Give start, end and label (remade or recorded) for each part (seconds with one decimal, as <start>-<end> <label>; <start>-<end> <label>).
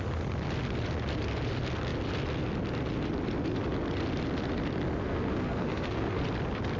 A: 0.0-5.0 recorded; 5.0-6.2 remade; 6.2-6.8 recorded